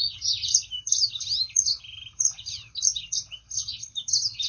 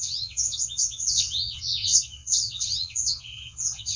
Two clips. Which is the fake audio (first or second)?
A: second